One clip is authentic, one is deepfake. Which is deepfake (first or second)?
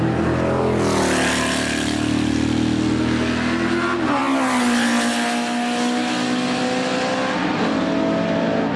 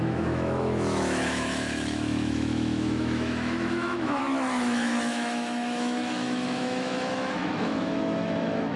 second